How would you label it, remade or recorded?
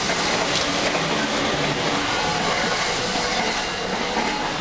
recorded